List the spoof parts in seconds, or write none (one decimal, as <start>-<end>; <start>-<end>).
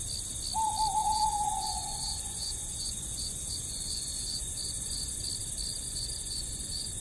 1.0-5.2; 5.7-7.0